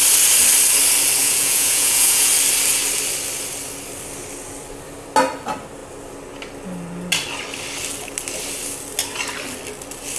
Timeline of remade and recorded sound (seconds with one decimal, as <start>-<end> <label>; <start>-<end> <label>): 0.0-1.2 recorded; 1.2-2.3 remade; 2.3-10.2 recorded